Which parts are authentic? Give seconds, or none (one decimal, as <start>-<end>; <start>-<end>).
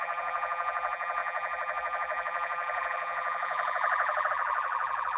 none